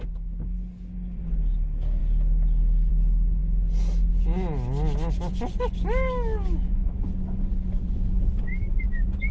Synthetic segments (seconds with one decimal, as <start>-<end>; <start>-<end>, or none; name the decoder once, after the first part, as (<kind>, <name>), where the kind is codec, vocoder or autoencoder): none